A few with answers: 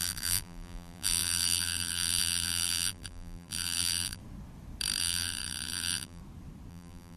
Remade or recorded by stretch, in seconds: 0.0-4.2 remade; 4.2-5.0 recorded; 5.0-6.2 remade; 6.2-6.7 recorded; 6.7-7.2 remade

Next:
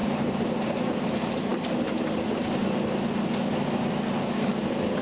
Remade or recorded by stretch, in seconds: 0.0-0.8 remade; 0.8-5.0 recorded

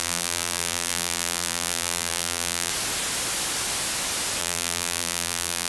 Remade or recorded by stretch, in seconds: 0.0-2.7 remade; 2.7-4.4 recorded; 4.4-5.7 remade

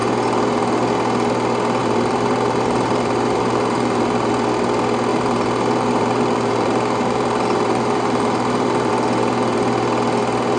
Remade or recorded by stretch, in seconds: 0.0-1.8 recorded; 1.8-4.3 remade; 4.3-5.1 recorded; 5.1-8.9 remade; 8.9-10.6 recorded